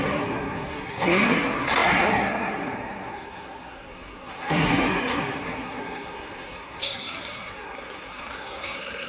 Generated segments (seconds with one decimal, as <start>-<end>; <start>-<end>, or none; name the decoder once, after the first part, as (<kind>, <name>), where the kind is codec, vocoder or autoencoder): 0.0-9.1 (codec, SNAC)